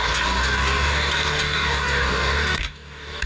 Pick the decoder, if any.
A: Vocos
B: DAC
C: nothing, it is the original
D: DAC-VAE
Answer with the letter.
B